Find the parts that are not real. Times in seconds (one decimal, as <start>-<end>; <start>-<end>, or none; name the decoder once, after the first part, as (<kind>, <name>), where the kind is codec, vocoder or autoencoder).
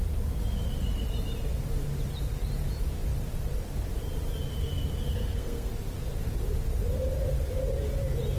5.1-5.7 (codec, SNAC)